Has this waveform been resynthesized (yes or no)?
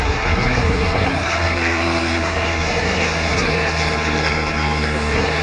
yes